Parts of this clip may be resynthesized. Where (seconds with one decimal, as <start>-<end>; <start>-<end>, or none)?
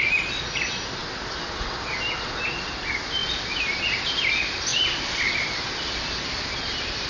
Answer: 4.7-5.6